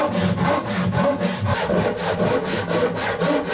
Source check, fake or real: real